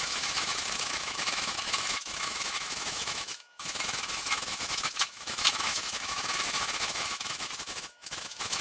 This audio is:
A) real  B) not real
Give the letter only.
B